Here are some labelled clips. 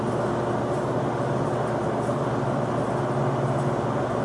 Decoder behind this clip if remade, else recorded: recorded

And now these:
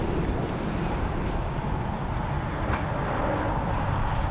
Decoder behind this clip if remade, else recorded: recorded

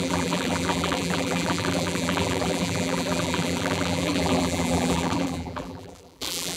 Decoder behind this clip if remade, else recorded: remade, vocoder, BigVGAN v2